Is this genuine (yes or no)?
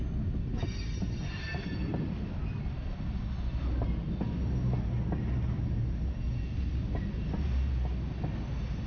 yes